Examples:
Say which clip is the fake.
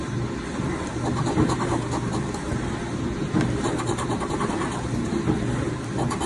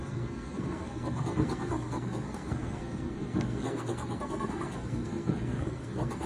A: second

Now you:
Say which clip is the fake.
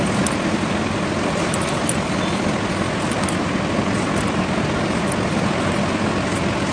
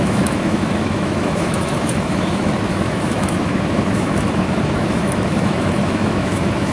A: second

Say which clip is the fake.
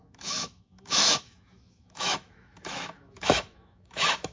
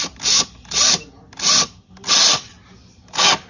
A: first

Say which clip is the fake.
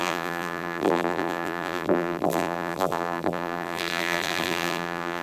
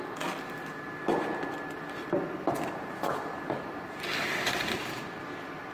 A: first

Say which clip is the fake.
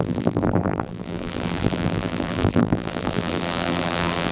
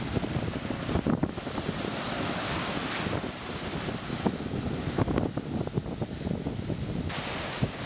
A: first